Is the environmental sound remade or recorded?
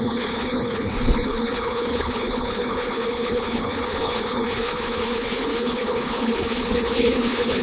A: remade